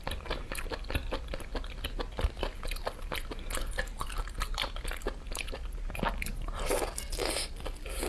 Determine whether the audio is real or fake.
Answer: real